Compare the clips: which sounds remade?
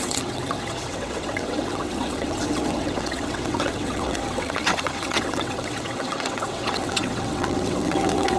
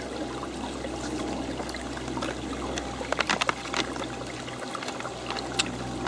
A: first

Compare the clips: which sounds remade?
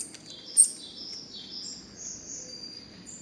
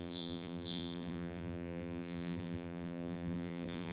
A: second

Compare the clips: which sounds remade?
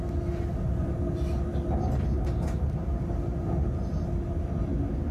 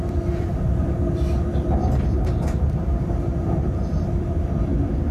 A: second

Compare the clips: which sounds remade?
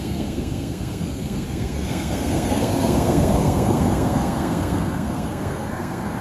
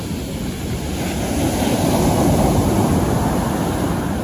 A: first